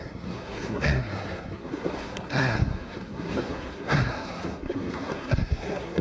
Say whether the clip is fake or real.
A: fake